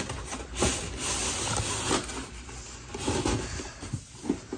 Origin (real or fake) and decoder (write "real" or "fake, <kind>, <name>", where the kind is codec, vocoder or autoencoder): real